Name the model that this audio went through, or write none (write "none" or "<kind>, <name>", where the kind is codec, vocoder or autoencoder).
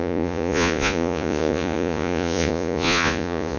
vocoder, Vocos